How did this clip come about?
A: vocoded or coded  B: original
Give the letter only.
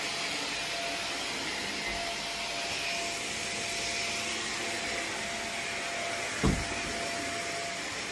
B